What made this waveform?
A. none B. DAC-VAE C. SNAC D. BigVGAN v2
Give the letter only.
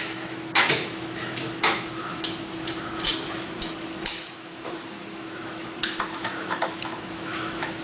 B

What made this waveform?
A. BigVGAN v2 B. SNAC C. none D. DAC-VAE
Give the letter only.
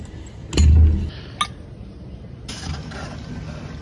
C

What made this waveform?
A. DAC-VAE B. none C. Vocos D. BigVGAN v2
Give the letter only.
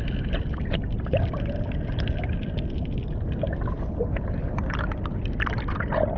B